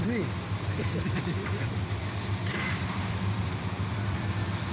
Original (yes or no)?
no